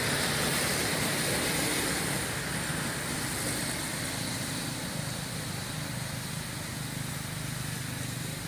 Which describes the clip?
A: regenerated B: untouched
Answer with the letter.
B